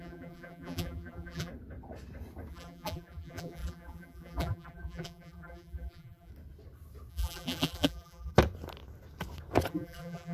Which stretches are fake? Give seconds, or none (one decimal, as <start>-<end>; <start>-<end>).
0.0-1.5; 2.5-6.3; 7.1-8.3; 9.7-10.3